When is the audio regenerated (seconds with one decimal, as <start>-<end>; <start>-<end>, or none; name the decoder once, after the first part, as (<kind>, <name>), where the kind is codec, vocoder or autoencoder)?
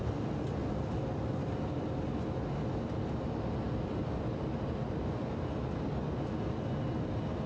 none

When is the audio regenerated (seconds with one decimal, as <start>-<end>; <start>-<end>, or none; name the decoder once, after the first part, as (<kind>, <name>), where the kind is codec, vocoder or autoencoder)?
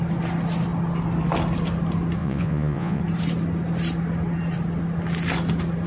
2.2-3.0 (vocoder, Vocos)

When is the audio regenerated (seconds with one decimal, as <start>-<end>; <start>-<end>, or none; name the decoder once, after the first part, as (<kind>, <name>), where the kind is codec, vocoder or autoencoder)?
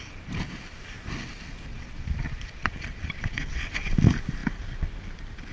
1.7-3.6 (vocoder, Vocos)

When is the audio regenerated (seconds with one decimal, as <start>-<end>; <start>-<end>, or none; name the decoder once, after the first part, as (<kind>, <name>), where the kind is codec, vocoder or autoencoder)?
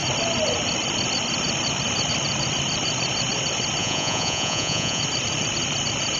3.8-5.0 (vocoder, Vocos)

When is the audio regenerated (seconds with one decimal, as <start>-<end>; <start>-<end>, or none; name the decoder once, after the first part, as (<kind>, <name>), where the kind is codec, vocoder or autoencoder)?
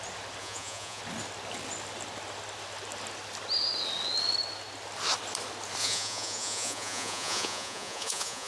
0.4-1.0 (vocoder, Vocos); 5.8-8.5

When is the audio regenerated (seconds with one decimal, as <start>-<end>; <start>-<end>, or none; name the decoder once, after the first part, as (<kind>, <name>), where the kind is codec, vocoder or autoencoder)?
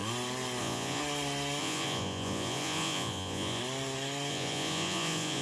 0.6-1.0 (vocoder, Vocos); 1.6-3.6; 4.3-5.4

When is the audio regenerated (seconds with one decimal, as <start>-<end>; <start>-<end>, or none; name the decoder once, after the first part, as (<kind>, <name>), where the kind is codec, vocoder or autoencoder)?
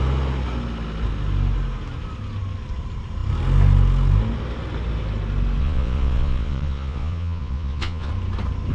5.6-8.1 (vocoder, Vocos)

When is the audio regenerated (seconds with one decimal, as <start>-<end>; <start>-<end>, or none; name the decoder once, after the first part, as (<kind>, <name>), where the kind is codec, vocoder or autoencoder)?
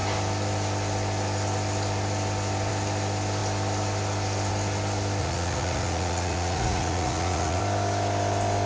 5.2-7.6 (vocoder, Vocos)